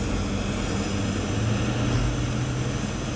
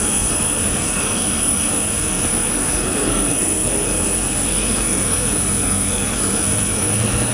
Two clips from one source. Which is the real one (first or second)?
first